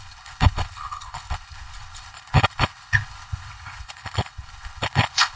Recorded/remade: remade